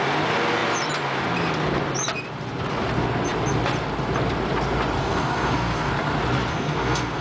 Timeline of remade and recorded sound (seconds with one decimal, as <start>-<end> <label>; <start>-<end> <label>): 0.0-5.0 recorded; 5.0-5.9 remade; 5.9-6.5 recorded; 6.5-7.2 remade